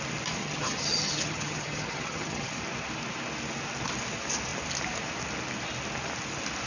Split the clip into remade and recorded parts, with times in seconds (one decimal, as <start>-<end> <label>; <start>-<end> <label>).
0.0-0.4 recorded; 0.4-2.6 remade; 2.6-6.7 recorded